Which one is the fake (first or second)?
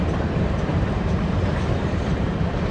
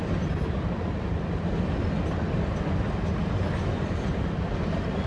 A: first